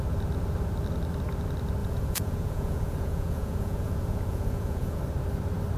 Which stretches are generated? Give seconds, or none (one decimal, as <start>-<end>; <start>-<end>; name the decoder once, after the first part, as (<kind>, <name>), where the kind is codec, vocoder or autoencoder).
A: 1.8-5.0 (vocoder, Vocos)